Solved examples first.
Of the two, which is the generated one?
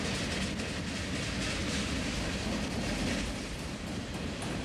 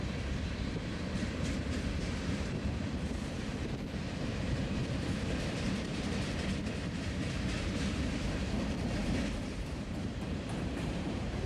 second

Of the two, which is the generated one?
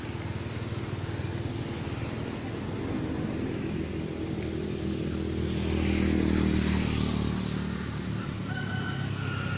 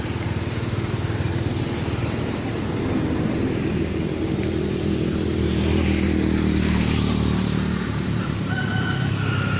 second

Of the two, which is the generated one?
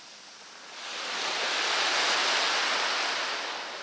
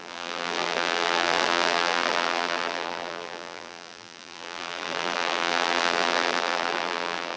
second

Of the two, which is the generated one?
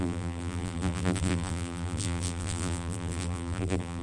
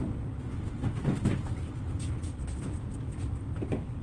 first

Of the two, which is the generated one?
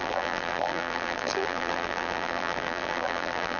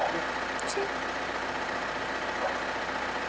first